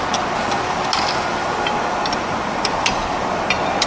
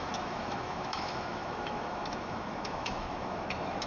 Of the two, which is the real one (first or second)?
first